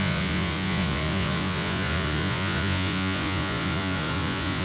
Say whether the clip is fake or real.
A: fake